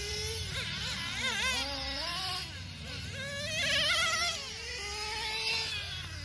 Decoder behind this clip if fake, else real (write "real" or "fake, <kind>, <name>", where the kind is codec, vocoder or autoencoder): real